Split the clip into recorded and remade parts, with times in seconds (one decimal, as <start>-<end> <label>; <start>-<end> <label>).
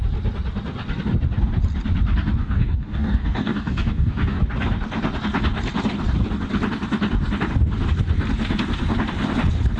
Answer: 0.0-2.4 recorded; 2.4-4.4 remade; 4.4-9.8 recorded